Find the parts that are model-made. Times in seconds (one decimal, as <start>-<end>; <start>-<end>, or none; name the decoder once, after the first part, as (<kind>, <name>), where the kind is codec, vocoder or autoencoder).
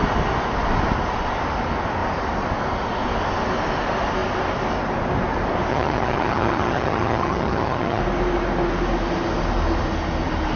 5.7-8.0 (vocoder, HiFi-GAN)